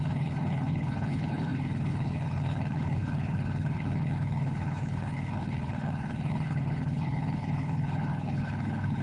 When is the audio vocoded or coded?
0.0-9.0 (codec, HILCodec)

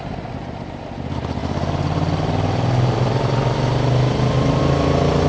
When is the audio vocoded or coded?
none

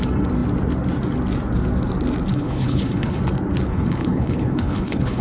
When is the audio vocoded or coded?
2.3-3.2 (codec, HILCodec); 3.7-5.2

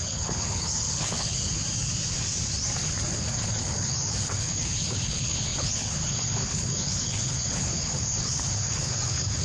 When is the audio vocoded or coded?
0.0-1.5 (codec, HILCodec); 3.1-9.4

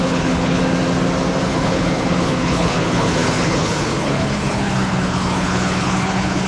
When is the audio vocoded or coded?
0.0-0.6 (codec, HILCodec); 1.4-6.5

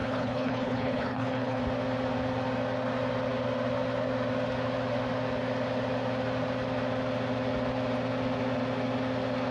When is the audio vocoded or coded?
0.0-1.6 (codec, HILCodec)